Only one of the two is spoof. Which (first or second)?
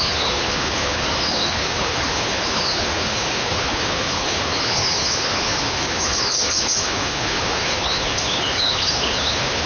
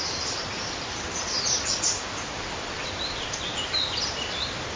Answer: first